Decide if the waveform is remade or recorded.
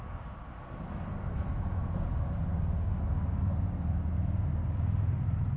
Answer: recorded